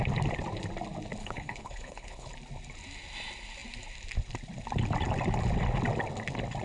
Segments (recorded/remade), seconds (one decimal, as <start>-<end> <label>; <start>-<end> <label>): 0.0-1.2 recorded; 1.2-2.3 remade; 2.3-6.6 recorded